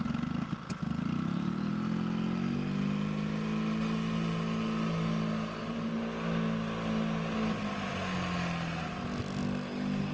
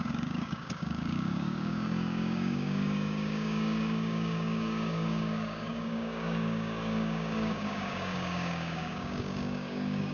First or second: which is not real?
second